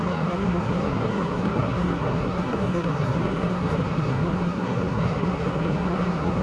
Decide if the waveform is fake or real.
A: fake